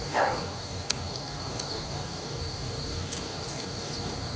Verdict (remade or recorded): remade